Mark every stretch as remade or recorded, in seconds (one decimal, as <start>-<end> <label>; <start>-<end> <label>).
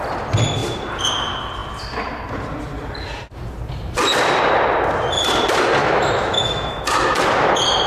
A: 0.0-5.8 recorded; 5.8-6.8 remade; 6.8-7.9 recorded